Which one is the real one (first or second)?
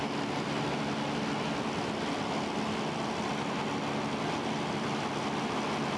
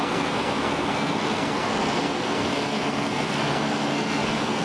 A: first